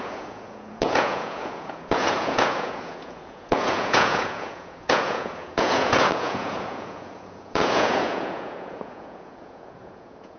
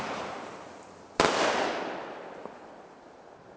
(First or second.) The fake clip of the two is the first